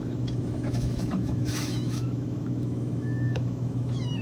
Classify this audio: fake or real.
fake